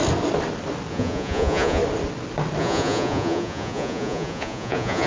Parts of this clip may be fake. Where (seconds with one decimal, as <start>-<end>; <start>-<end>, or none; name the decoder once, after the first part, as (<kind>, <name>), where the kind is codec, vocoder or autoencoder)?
0.9-1.8 (vocoder, Vocos); 2.6-5.1